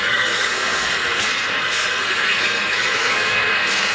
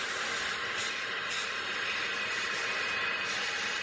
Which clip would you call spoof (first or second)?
first